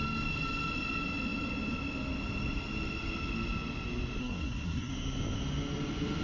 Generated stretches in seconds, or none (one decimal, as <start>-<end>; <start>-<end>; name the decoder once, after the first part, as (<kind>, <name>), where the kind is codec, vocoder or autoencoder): 4.2-4.9 (codec, SNAC)